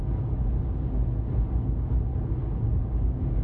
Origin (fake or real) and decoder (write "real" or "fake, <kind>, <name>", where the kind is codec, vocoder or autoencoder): real